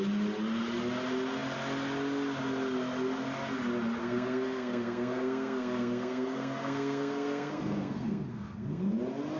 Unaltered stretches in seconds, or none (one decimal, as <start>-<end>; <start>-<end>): 0.0-4.0; 8.9-9.4